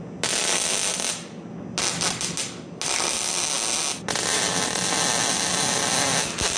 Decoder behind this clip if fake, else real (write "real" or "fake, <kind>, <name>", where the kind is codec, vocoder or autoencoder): real